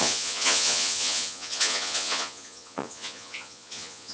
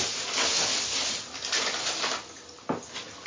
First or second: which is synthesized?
first